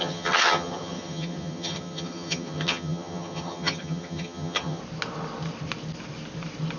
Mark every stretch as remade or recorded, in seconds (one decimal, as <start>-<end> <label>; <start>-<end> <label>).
0.0-4.8 remade; 4.8-6.8 recorded